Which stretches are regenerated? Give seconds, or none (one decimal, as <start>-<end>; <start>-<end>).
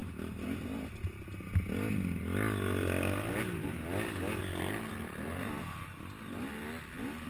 none